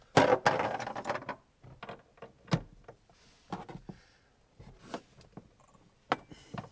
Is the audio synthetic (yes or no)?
no